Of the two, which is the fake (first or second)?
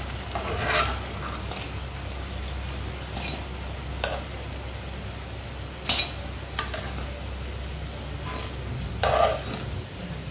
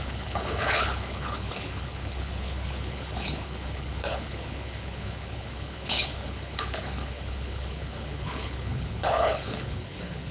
second